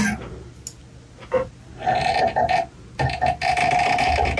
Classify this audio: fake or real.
real